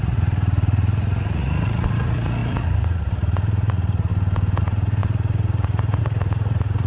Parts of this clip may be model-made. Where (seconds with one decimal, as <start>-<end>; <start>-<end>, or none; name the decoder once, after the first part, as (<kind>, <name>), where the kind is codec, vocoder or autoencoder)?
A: 0.0-4.1 (vocoder, Vocos); 4.6-6.9